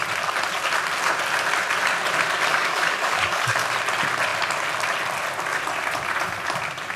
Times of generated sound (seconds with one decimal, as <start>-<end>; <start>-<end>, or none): 2.5-3.6